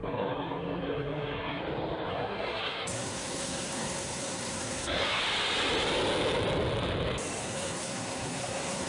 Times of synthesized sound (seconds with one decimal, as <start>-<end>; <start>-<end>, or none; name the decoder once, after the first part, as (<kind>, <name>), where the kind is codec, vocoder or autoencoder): 0.0-1.6 (codec, SNAC); 2.1-5.2; 7.4-8.9